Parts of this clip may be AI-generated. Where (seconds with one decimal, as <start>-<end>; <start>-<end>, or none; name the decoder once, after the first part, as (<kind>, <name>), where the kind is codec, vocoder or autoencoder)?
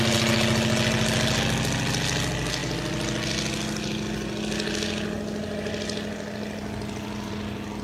none